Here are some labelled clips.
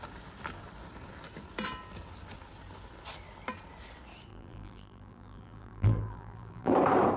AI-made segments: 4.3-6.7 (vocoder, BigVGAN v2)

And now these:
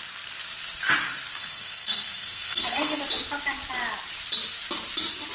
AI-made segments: 1.3-3.0 (codec, SNAC)

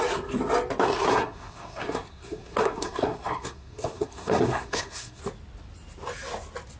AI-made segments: 1.1-5.2 (codec, SNAC)